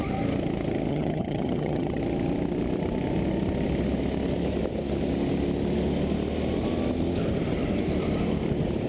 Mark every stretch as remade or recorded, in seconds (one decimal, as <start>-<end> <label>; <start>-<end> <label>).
0.0-0.9 recorded; 0.9-2.0 remade; 2.0-8.9 recorded